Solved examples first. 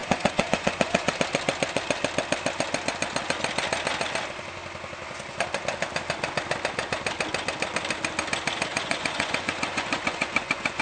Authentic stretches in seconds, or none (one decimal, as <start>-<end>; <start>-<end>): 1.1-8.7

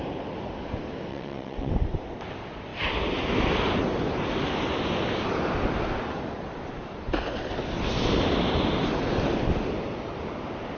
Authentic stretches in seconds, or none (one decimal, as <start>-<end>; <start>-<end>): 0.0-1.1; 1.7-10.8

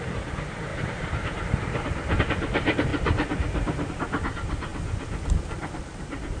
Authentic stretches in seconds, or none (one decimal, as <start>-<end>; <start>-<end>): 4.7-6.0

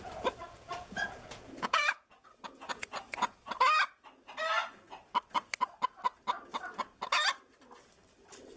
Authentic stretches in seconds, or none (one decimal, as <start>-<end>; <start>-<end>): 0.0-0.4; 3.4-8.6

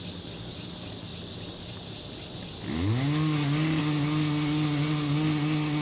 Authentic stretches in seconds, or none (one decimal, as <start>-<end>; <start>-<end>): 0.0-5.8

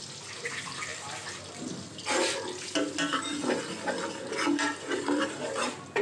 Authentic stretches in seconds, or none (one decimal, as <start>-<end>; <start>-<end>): 0.0-6.0

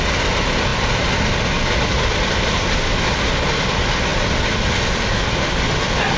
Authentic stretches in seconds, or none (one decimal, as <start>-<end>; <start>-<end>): 0.0-6.2